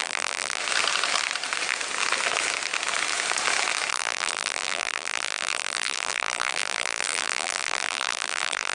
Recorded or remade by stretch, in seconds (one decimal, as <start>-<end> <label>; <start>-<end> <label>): 0.0-0.6 remade; 0.6-3.9 recorded; 3.9-8.7 remade